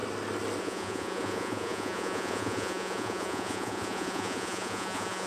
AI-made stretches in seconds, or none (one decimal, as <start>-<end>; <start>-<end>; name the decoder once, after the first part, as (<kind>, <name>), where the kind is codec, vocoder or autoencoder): 0.6-5.3 (vocoder, Vocos)